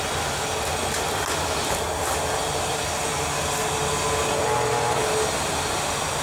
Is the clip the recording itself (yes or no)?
yes